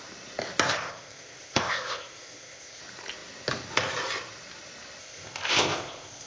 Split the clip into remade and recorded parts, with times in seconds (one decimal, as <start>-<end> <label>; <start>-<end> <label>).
0.0-0.7 recorded; 0.7-2.8 remade; 2.8-5.0 recorded; 5.0-6.3 remade